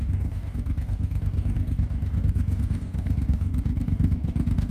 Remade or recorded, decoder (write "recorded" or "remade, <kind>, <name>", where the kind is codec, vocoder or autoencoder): remade, codec, DAC